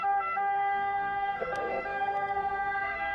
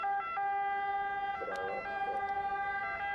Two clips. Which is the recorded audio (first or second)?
second